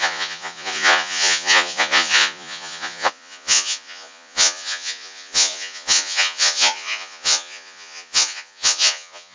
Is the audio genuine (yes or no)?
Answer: no